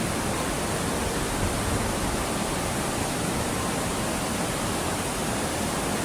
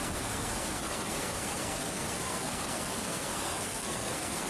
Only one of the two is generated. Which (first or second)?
second